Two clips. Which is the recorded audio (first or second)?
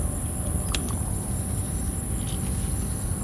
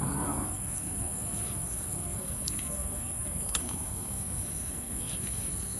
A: first